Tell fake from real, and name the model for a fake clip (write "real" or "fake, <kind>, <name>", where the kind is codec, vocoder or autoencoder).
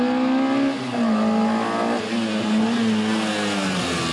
real